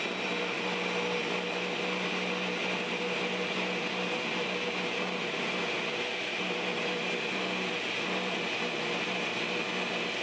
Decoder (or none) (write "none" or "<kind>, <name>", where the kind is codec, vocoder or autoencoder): none